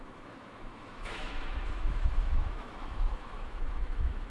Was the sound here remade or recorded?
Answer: remade